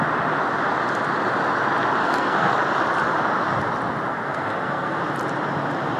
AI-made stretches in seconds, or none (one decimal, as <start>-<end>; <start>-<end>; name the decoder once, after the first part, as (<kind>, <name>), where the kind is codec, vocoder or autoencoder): 2.0-2.5 (codec, SNAC); 4.1-5.0